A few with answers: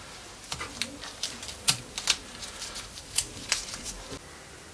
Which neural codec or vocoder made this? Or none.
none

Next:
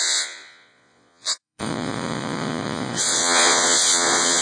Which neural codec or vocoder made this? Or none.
vocoder, Vocos